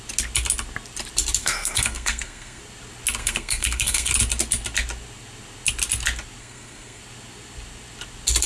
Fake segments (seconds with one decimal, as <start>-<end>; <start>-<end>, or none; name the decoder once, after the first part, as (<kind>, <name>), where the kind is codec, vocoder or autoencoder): 1.4-2.6 (codec, SNAC); 3.2-4.1; 6.4-7.0